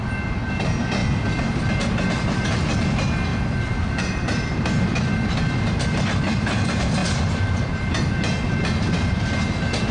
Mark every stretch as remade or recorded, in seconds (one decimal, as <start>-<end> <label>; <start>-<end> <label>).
0.0-3.3 recorded; 3.3-4.5 remade; 4.5-7.0 recorded; 7.0-9.2 remade; 9.2-9.9 recorded